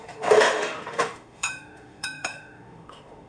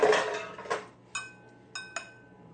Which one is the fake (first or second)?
first